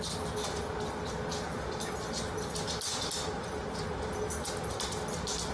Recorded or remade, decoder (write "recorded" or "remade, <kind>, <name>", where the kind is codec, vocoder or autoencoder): recorded